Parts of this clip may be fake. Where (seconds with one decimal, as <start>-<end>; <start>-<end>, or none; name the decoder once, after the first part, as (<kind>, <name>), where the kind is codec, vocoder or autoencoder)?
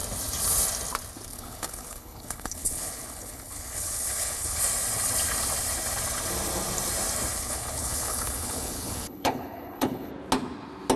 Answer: 1.3-4.6 (codec, HILCodec); 7.3-10.1